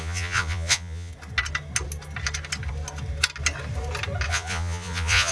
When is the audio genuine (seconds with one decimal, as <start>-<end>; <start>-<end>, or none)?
1.1-4.3